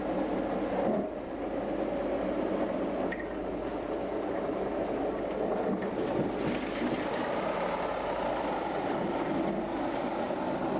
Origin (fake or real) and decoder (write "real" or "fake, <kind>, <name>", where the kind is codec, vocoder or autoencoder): real